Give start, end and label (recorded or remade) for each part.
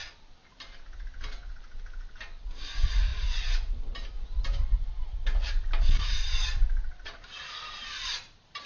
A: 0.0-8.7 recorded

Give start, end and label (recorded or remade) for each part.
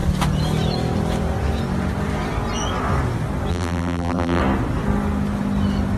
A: 0.0-3.5 recorded; 3.5-4.4 remade; 4.4-6.0 recorded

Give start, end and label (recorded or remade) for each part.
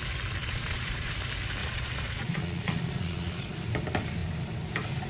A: 0.0-0.4 recorded; 0.4-1.1 remade; 1.1-1.6 recorded; 1.6-3.5 remade; 3.5-5.1 recorded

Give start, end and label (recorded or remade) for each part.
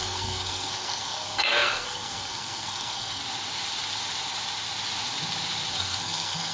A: 0.0-3.2 remade; 3.2-5.7 recorded; 5.7-6.5 remade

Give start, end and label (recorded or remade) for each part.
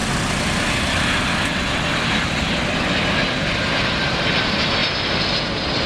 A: 0.0-5.9 recorded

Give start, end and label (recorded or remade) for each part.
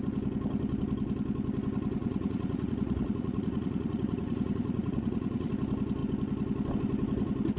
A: 0.0-2.0 recorded; 2.0-5.5 remade; 5.5-7.6 recorded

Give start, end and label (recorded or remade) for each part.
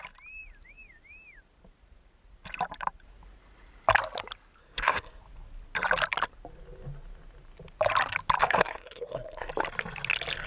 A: 0.0-4.6 recorded; 4.6-5.2 remade; 5.2-8.4 recorded; 8.4-9.5 remade; 9.5-10.5 recorded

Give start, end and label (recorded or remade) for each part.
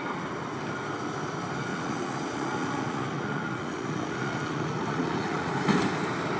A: 0.0-1.7 recorded; 1.7-5.5 remade; 5.5-6.4 recorded